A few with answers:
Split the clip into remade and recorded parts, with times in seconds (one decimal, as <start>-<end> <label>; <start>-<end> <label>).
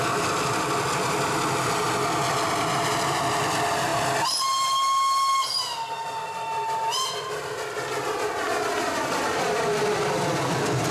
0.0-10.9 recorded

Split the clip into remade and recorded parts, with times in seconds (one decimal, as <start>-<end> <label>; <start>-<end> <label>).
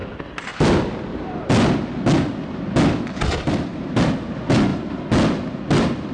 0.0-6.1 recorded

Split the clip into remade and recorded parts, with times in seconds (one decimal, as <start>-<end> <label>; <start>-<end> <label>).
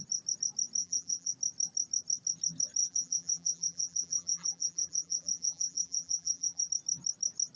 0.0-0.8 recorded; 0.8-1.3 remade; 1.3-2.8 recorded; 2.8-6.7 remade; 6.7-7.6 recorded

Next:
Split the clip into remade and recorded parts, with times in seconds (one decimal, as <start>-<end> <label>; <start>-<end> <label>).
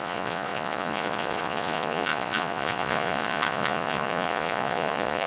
0.0-5.3 remade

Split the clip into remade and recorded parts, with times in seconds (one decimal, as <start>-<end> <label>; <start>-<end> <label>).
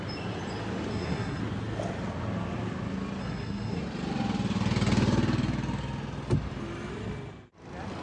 0.0-0.9 recorded; 0.9-1.4 remade; 1.4-3.2 recorded; 3.2-3.8 remade; 3.8-8.0 recorded